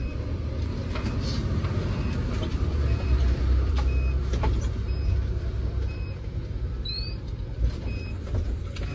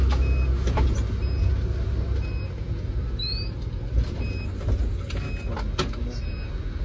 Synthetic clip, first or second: first